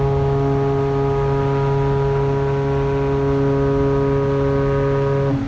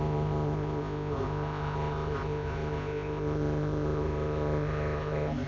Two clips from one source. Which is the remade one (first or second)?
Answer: second